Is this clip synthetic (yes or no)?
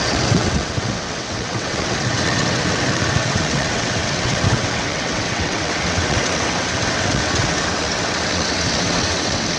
yes